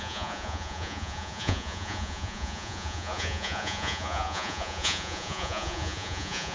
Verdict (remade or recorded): remade